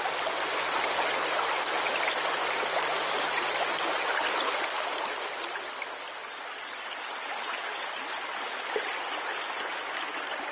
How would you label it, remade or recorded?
recorded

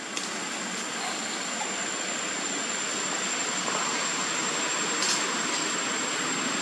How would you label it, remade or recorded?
recorded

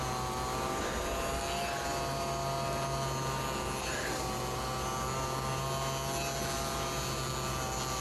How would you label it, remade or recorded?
recorded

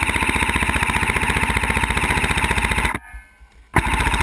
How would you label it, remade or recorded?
recorded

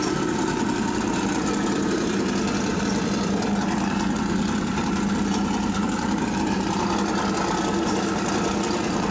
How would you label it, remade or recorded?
remade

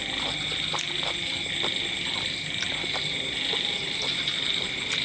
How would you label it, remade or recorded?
recorded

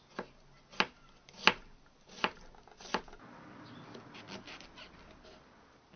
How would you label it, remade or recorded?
recorded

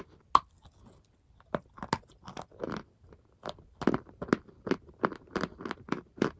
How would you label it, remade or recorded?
recorded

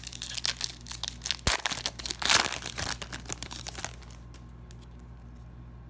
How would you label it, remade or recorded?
recorded